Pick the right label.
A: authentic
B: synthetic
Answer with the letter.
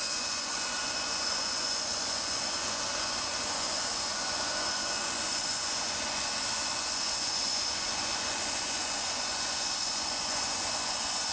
B